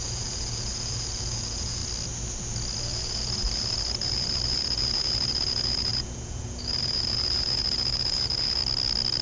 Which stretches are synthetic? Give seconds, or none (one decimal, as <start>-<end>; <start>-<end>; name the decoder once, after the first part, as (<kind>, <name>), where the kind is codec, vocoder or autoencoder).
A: 0.0-1.8 (vocoder, Vocos); 2.8-8.6